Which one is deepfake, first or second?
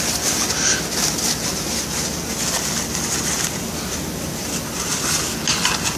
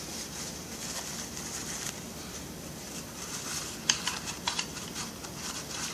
second